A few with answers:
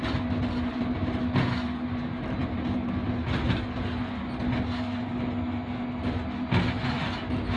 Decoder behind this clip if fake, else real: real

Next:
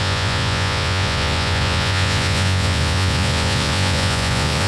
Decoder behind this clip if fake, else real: fake, vocoder, Vocos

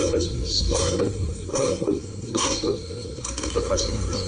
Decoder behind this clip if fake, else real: fake, codec, SNAC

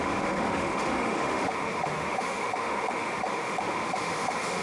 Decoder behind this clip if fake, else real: fake, autoencoder, DAC-VAE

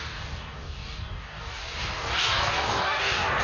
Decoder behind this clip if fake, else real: fake, codec, DAC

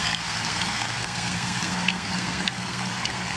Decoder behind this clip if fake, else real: fake, codec, SNAC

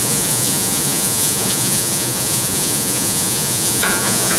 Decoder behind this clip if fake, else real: fake, vocoder, Vocos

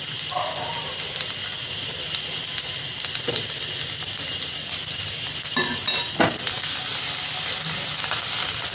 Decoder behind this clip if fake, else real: real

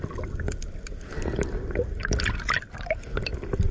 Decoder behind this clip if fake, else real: real